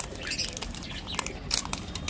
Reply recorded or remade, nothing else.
recorded